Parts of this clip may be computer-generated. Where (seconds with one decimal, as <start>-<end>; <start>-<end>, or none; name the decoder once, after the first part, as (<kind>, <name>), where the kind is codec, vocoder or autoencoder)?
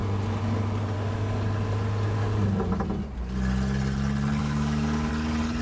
4.4-5.1 (codec, DAC)